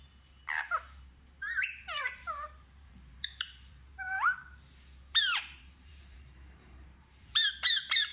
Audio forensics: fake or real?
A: fake